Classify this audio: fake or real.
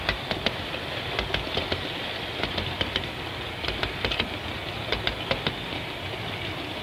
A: real